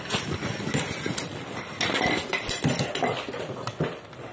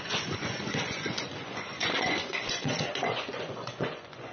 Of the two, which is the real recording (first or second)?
first